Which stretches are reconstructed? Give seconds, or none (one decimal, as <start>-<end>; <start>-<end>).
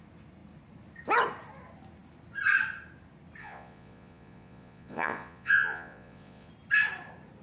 3.4-6.5